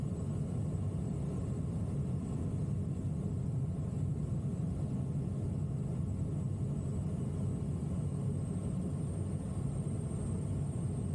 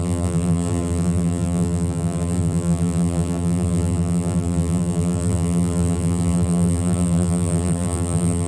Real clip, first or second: first